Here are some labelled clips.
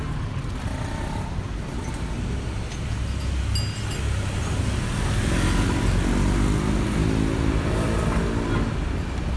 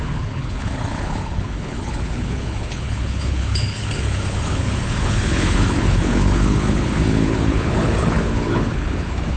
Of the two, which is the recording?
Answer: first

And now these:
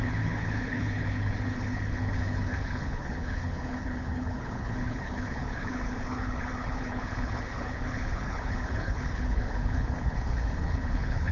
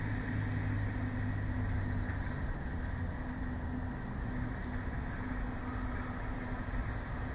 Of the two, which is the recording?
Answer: second